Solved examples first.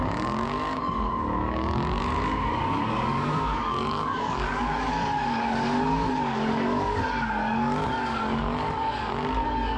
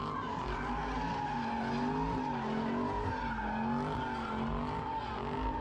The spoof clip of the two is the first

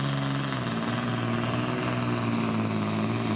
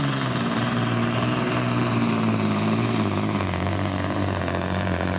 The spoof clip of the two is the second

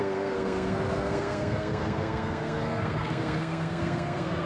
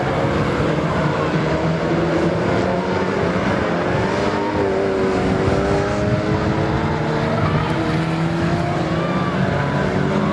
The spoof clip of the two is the first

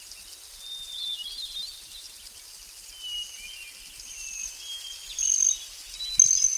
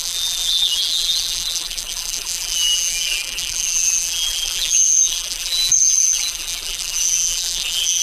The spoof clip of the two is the second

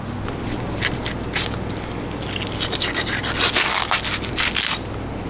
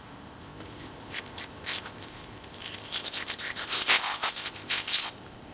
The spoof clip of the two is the second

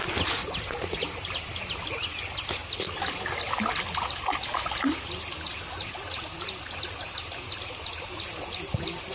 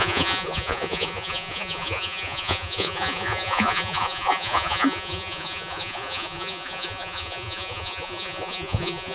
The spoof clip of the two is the second